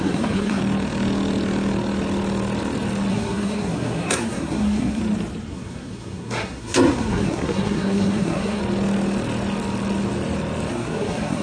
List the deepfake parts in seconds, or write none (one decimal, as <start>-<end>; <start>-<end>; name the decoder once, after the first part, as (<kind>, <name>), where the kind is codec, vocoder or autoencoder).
0.0-0.6 (codec, SNAC); 3.1-5.0; 5.5-8.6; 10.7-11.4